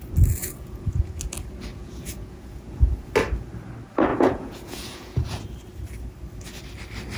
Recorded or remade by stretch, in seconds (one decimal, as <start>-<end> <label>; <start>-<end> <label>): 0.0-0.4 recorded; 0.4-1.1 remade; 1.1-1.7 recorded; 1.7-3.1 remade; 3.1-4.1 recorded; 4.1-5.4 remade; 5.4-7.2 recorded